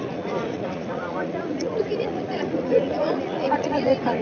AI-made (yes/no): yes